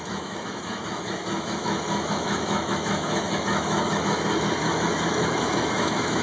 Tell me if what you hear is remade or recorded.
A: remade